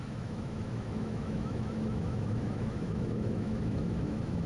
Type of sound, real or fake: fake